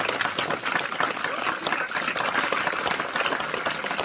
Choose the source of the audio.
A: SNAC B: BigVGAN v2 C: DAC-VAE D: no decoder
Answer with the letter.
D